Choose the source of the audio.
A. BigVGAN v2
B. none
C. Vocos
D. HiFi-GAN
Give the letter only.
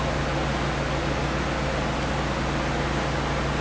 B